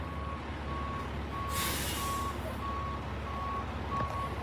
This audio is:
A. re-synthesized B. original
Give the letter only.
B